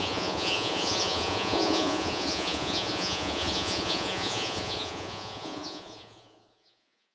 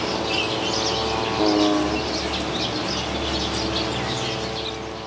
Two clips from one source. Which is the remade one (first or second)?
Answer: first